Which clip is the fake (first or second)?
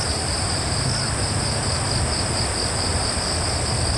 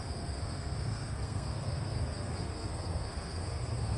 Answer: second